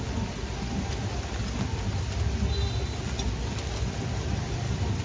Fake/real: real